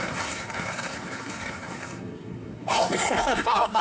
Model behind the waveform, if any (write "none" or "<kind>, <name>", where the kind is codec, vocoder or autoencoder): codec, SNAC